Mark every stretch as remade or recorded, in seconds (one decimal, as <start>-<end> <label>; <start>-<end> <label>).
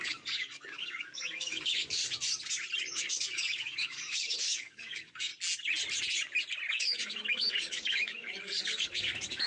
0.0-2.0 remade; 2.0-2.8 recorded; 2.8-5.3 remade; 5.3-6.7 recorded; 6.7-9.5 remade